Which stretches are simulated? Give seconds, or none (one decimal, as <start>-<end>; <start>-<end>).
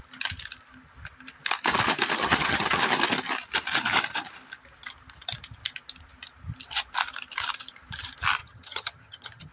2.2-2.8; 8.4-9.5